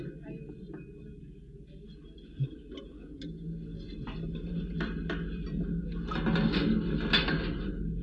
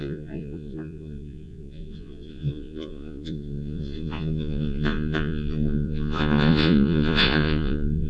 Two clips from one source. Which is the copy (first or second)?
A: second